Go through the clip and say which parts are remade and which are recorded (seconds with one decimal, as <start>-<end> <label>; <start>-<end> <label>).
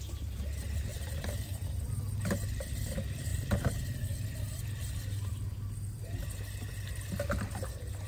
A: 0.0-0.9 recorded; 0.9-1.9 remade; 1.9-8.1 recorded